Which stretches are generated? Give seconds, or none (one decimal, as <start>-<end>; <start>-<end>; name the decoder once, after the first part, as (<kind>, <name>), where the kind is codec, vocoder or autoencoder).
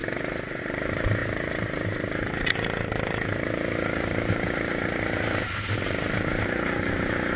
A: 0.0-7.4 (vocoder, BigVGAN v2)